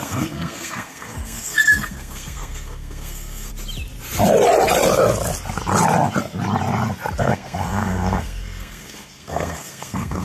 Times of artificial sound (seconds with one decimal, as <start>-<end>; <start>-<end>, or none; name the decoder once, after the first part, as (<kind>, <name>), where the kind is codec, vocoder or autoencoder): 0.0-3.5 (codec, SNAC); 7.2-10.2